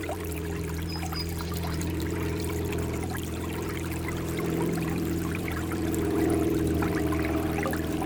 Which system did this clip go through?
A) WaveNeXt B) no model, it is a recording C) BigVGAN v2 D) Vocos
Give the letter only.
C